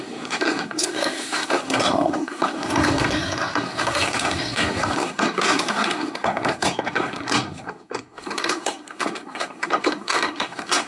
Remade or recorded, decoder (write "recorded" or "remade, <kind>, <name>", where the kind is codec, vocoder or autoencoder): remade, codec, SNAC